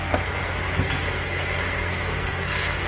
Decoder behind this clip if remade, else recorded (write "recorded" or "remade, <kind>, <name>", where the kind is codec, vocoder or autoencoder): remade, codec, SNAC